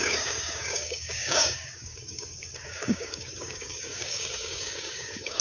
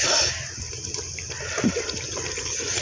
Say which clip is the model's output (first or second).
first